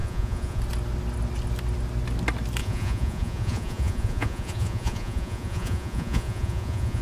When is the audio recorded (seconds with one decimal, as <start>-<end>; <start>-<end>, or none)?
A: 0.6-2.6